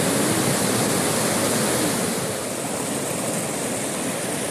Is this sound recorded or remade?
recorded